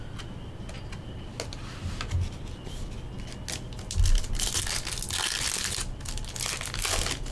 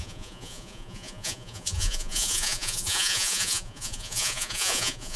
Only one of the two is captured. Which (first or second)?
first